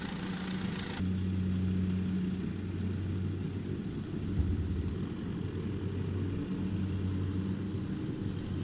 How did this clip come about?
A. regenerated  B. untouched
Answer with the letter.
B